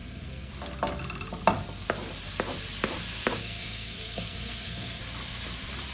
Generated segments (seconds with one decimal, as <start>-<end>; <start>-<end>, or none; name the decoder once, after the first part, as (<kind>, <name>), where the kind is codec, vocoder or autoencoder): 0.0-0.5 (codec, SNAC); 3.4-5.0